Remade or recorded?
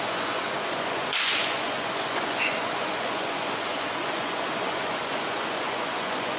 remade